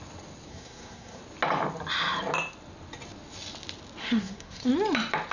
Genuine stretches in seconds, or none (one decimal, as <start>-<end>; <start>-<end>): 0.0-0.5; 1.2-4.0; 4.7-5.3